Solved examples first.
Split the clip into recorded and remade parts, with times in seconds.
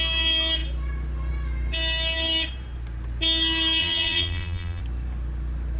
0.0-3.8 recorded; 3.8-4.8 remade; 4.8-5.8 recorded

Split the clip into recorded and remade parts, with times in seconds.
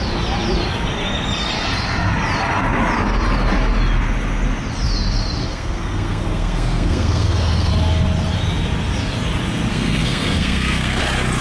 0.0-5.4 recorded; 5.4-7.7 remade; 7.7-9.7 recorded; 9.7-11.0 remade; 11.0-11.4 recorded